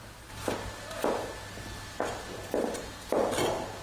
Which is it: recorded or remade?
recorded